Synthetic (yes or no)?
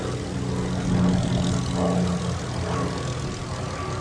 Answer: no